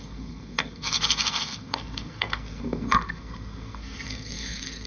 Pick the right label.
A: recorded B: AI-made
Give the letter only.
B